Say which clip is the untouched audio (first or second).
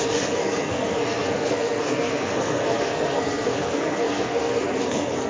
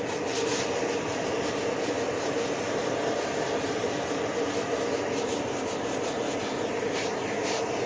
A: second